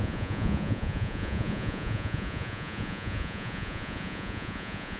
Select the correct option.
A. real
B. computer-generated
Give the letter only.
B